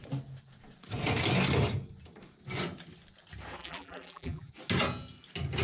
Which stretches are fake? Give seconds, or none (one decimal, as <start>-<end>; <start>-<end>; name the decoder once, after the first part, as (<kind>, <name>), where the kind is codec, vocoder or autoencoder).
3.6-4.5 (vocoder, BigVGAN v2)